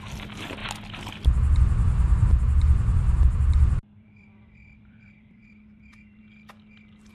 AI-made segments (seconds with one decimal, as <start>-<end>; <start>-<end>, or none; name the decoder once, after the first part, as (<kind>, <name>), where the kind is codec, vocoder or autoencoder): 2.3-6.2 (vocoder, BigVGAN v2)